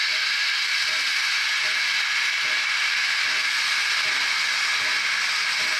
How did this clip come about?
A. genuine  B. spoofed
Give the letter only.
A